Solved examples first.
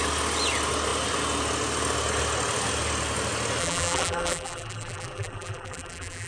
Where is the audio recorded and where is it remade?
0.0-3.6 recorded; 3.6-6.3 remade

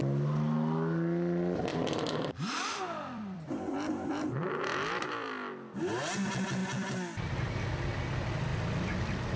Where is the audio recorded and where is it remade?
0.0-1.7 recorded; 1.7-5.3 remade; 5.3-9.4 recorded

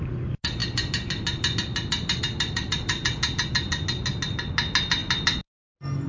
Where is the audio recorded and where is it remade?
0.0-6.1 recorded